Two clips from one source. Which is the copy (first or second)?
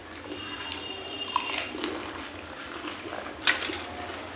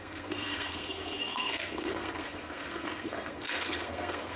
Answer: second